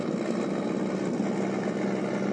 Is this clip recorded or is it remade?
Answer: recorded